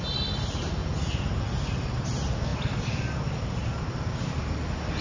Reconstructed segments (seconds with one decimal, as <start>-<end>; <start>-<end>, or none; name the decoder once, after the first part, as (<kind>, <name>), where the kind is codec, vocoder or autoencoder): 2.5-4.1 (vocoder, BigVGAN v2)